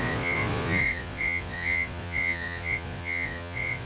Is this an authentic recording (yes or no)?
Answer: no